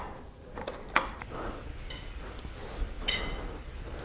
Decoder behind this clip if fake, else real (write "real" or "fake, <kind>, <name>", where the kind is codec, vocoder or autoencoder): real